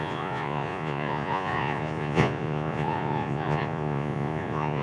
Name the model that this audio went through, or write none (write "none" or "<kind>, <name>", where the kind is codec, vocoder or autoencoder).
vocoder, Vocos